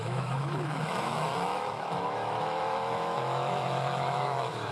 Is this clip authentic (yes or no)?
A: no